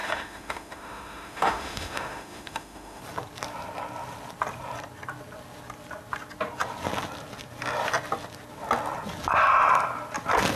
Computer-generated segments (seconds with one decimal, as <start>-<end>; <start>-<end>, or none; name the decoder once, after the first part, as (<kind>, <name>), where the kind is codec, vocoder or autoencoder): 0.0-3.0 (autoencoder, DAC-VAE)